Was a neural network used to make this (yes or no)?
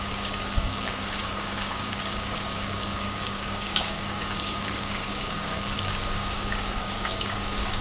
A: yes